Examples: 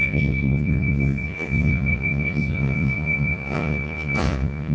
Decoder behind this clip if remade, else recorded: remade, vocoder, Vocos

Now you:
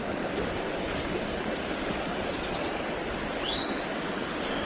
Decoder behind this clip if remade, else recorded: recorded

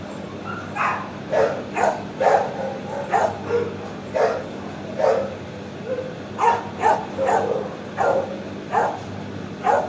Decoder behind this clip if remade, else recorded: recorded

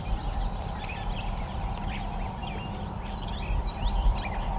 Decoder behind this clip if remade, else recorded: remade, vocoder, BigVGAN v2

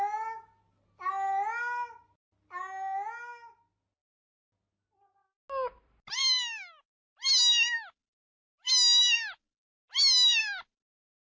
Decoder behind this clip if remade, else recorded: recorded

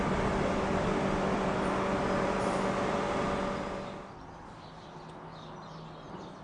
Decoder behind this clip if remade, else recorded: recorded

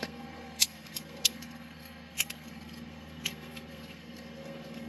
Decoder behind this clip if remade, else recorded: remade, codec, SNAC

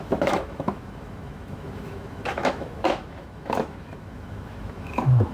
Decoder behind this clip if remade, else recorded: remade, autoencoder, DAC-VAE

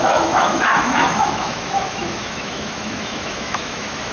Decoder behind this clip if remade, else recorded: remade, autoencoder, DAC-VAE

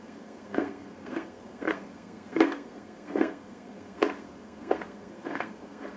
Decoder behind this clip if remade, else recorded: remade, codec, SNAC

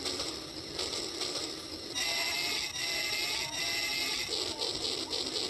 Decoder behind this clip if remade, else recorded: recorded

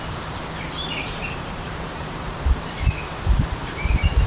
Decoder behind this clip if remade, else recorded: remade, vocoder, BigVGAN v2